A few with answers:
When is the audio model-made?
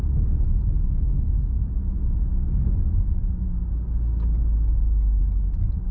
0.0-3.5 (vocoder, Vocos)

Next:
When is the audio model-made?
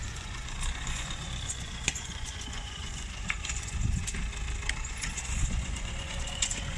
0.0-4.0 (vocoder, Vocos); 4.8-6.8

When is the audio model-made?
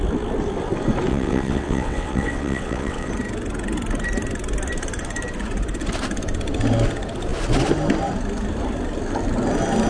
1.1-3.1 (vocoder, WaveNeXt)